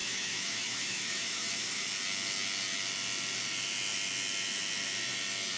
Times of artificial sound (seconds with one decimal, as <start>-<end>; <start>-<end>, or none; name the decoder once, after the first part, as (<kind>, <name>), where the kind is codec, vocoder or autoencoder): 0.0-1.9 (autoencoder, DAC-VAE)